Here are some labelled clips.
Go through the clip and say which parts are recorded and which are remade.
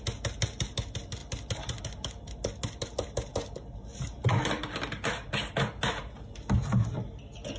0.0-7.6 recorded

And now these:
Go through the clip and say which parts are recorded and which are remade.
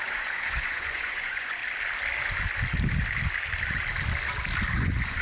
0.0-1.6 remade; 1.6-4.7 recorded; 4.7-5.2 remade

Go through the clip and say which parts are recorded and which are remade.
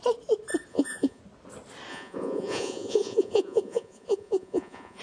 0.0-0.7 recorded; 0.7-1.2 remade; 1.2-1.9 recorded; 1.9-5.0 remade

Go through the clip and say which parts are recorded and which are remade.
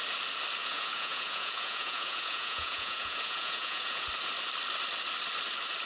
0.0-0.6 recorded; 0.6-4.1 remade; 4.1-5.9 recorded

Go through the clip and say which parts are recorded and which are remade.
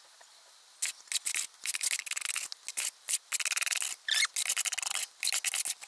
0.0-5.9 recorded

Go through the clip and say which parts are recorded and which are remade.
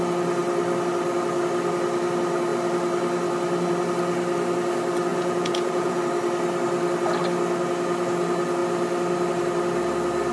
0.0-5.1 recorded; 5.1-6.0 remade; 6.0-10.3 recorded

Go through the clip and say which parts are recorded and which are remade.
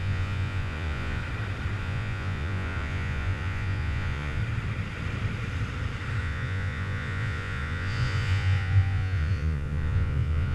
0.0-1.2 remade; 1.2-1.8 recorded; 1.8-4.4 remade; 4.4-6.2 recorded; 6.2-10.5 remade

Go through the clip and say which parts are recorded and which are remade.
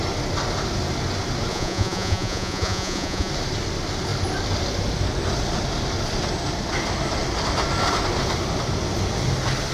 0.0-1.5 recorded; 1.5-3.3 remade; 3.3-9.7 recorded